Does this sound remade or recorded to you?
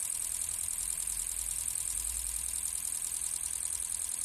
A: remade